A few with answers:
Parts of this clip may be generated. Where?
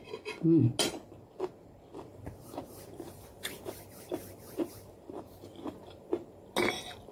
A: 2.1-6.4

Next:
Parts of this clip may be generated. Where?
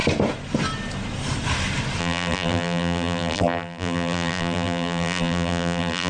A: 2.0-6.1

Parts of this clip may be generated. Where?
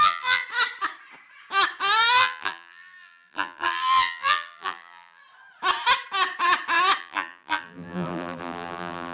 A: 0.0-0.4; 2.2-5.2; 7.0-9.1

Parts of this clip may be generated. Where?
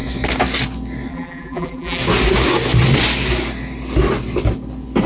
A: 1.1-2.0